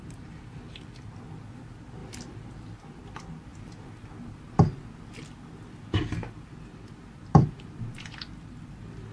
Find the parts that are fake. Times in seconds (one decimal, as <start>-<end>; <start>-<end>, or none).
0.0-2.0; 3.0-3.5; 6.4-9.1